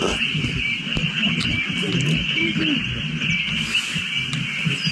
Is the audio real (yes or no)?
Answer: yes